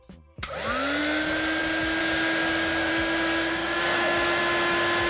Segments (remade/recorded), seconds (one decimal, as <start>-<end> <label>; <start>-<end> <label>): 0.0-2.0 recorded; 2.0-2.9 remade; 2.9-3.6 recorded; 3.6-4.4 remade; 4.4-5.1 recorded